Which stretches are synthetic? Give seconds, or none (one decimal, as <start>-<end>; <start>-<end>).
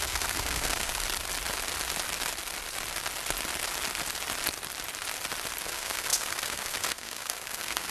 0.0-0.9; 5.6-7.9